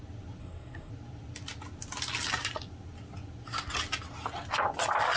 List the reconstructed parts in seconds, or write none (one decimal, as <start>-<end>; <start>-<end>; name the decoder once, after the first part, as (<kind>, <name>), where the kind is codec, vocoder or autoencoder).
0.4-0.9 (codec, SNAC)

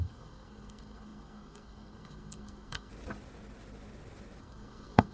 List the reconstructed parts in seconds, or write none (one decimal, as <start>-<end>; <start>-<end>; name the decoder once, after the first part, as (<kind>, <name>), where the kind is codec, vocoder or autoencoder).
0.0-2.9 (codec, SNAC); 4.4-5.1

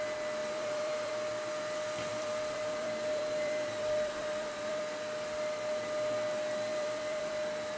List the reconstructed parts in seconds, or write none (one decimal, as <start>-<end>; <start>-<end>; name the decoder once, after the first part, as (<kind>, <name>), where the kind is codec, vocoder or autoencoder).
0.4-1.1 (vocoder, BigVGAN v2); 2.1-4.8; 6.7-7.3